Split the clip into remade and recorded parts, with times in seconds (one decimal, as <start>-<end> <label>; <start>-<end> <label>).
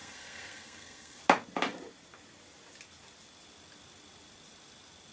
0.0-1.2 remade; 1.2-5.1 recorded